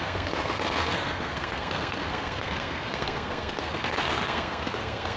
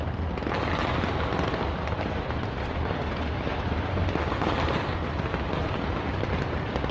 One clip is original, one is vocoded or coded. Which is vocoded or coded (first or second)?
first